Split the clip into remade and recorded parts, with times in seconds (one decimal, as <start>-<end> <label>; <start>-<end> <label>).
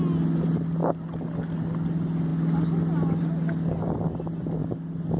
0.0-5.2 recorded